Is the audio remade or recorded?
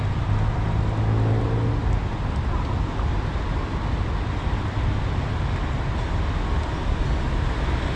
recorded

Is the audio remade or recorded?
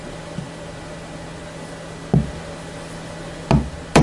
recorded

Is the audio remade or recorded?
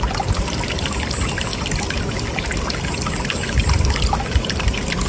recorded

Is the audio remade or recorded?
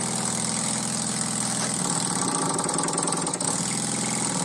recorded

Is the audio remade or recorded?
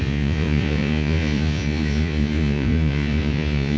remade